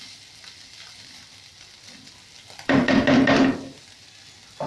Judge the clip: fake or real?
real